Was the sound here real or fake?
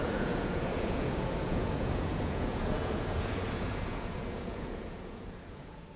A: fake